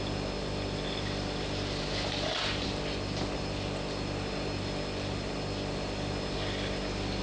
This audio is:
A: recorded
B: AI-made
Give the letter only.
A